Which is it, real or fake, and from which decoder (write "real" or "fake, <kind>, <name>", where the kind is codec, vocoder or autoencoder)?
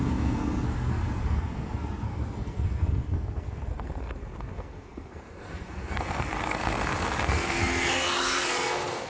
fake, codec, SNAC